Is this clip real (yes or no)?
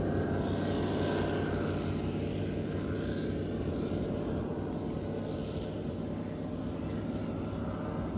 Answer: yes